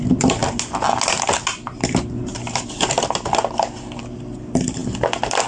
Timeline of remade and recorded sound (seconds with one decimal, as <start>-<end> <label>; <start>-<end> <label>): 0.0-0.4 remade; 0.4-1.4 recorded; 1.4-4.8 remade; 4.8-5.5 recorded